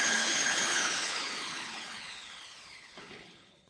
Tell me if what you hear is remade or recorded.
remade